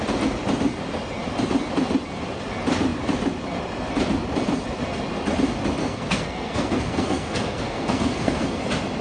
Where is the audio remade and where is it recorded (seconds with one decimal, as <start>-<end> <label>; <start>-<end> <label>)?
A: 0.0-5.8 recorded; 5.8-8.6 remade; 8.6-9.0 recorded